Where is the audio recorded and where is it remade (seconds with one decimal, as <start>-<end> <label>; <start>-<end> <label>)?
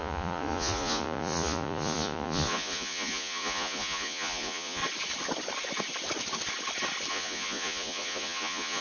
0.0-4.8 remade; 4.8-7.1 recorded; 7.1-8.8 remade